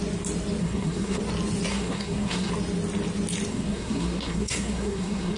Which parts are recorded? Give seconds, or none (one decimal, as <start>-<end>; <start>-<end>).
0.0-0.6; 1.2-1.7; 2.5-3.5